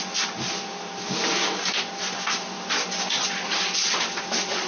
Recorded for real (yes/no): yes